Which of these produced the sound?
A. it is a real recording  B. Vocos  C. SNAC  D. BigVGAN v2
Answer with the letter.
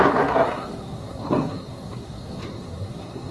C